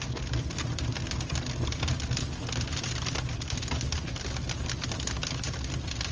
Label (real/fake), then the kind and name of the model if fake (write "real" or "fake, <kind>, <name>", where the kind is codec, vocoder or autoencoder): real